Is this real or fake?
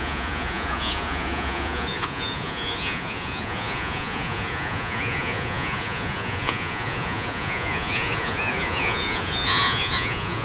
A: fake